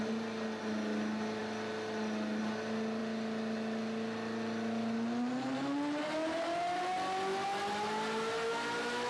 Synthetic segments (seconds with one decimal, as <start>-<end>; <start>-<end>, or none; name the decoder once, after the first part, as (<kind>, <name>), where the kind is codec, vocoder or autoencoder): none